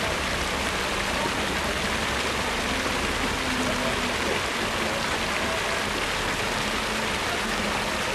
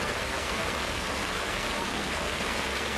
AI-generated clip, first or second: second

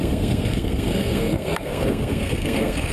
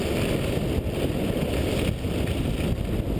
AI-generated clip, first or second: first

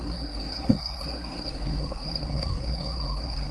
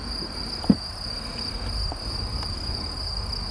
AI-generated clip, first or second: first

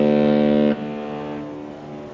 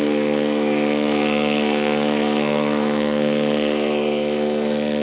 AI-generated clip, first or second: second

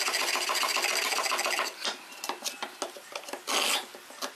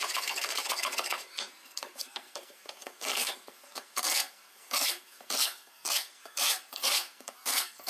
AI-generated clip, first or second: second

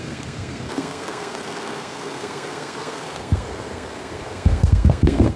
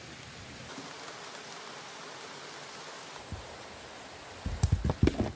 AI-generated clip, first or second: first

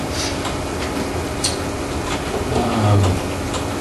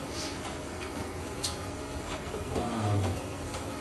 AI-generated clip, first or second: second